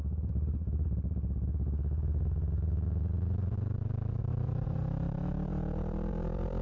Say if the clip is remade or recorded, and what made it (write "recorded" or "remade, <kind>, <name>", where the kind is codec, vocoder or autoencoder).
recorded